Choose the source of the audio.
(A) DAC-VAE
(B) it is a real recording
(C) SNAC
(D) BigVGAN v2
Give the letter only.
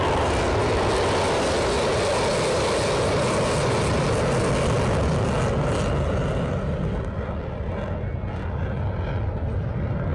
B